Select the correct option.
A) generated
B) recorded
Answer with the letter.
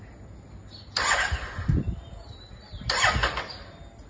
B